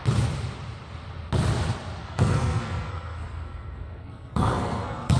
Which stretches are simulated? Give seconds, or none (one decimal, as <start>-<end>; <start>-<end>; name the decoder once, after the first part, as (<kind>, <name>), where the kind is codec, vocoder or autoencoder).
2.0-5.2 (codec, SNAC)